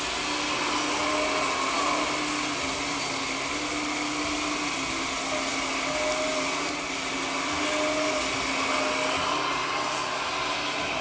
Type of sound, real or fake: real